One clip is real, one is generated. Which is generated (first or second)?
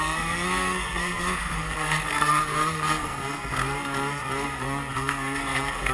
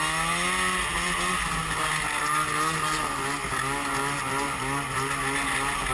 first